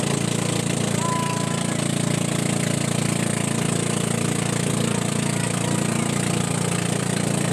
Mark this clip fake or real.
real